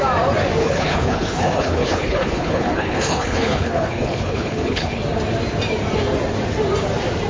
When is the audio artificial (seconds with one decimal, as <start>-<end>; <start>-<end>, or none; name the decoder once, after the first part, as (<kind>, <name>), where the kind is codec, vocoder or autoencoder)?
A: 0.6-5.0 (codec, HILCodec)